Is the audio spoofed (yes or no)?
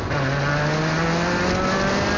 no